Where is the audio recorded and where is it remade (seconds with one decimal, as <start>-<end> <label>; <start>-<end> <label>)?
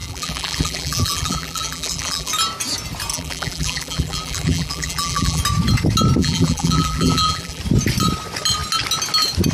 0.0-2.3 remade; 2.3-3.1 recorded; 3.1-5.4 remade; 5.4-6.2 recorded; 6.2-7.6 remade; 7.6-9.5 recorded